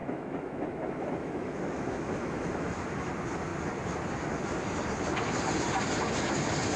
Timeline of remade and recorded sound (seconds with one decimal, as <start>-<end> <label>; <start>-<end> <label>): 0.0-3.1 remade; 3.1-6.8 recorded